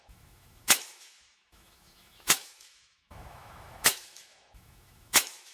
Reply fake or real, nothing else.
fake